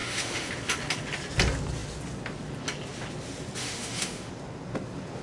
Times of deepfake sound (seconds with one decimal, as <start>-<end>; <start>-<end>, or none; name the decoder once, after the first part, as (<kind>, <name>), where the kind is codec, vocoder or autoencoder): 0.0-0.5 (autoencoder, DAC-VAE); 3.6-4.3